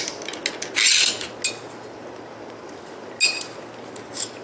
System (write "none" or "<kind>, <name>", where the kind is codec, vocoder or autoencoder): none